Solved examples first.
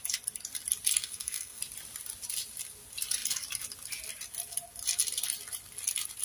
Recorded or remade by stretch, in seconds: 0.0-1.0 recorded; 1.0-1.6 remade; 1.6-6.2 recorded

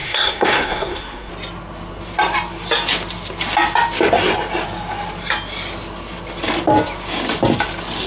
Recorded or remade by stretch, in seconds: 0.0-1.3 remade; 1.3-8.1 recorded

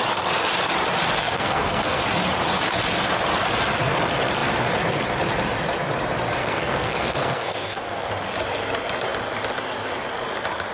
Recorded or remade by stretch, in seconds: 0.0-1.2 recorded; 1.2-2.0 remade; 2.0-6.4 recorded; 6.4-8.1 remade; 8.1-10.7 recorded

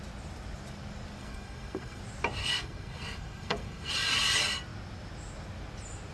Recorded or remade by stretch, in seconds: 0.0-1.2 recorded; 1.2-2.0 remade; 2.0-2.4 recorded; 2.4-3.9 remade; 3.9-6.1 recorded

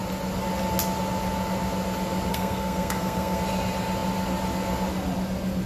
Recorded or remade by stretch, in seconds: 0.0-2.3 recorded; 2.3-3.4 remade; 3.4-5.7 recorded

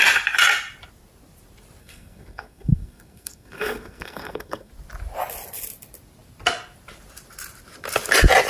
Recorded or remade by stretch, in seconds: 0.0-1.8 recorded; 1.8-4.7 remade; 4.7-8.5 recorded

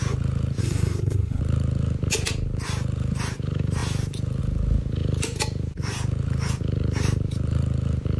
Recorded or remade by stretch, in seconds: 0.0-0.6 recorded; 0.6-1.4 remade; 1.4-8.2 recorded

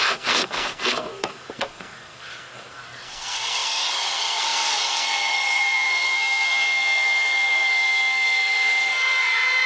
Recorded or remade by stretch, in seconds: 0.0-9.7 remade